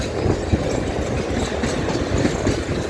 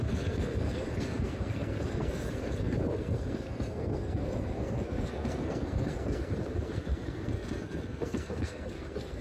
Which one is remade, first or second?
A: second